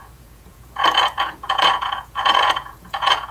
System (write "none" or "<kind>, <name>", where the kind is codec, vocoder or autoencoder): vocoder, Vocos